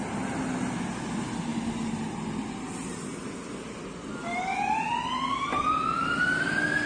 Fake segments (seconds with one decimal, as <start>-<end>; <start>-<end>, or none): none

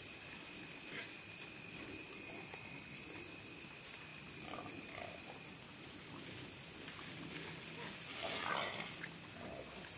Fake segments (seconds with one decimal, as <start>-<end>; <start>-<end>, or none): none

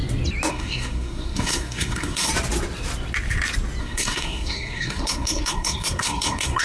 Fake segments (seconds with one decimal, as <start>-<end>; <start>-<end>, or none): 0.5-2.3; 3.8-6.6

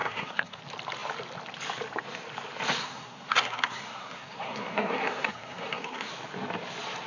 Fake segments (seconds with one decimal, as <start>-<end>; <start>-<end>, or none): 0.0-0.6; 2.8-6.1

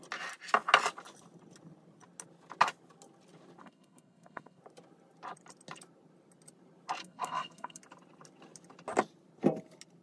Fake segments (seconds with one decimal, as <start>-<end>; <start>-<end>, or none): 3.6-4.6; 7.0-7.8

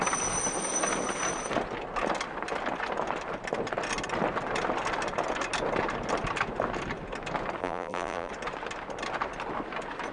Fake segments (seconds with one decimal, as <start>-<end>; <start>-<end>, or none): 7.6-8.3